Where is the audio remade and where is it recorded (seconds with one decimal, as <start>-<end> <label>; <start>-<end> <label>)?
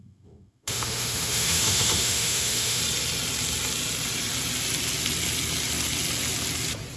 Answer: 0.0-2.8 remade; 2.8-7.0 recorded